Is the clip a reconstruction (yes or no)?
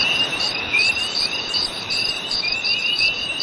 yes